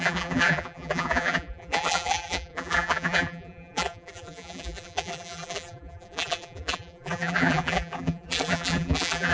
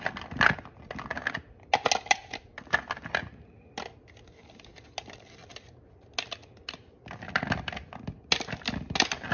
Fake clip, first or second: first